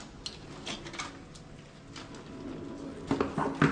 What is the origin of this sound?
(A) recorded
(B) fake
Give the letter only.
A